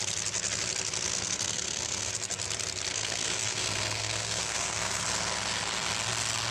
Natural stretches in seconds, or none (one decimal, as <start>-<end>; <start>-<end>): 0.0-1.1; 2.1-2.9; 5.0-6.5